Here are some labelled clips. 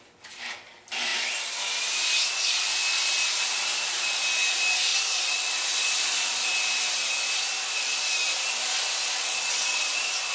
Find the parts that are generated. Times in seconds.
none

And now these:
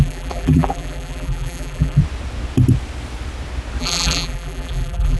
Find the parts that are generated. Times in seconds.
0.0-2.0 (vocoder, BigVGAN v2); 3.8-5.2

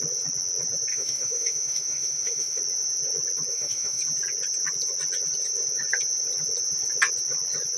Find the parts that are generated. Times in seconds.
0.9-2.6 (autoencoder, DAC-VAE); 3.5-4.0

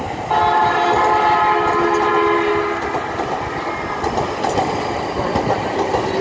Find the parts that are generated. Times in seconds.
none

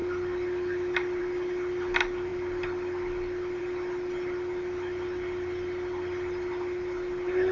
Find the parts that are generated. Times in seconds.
none